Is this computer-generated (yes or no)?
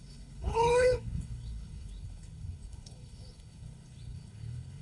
yes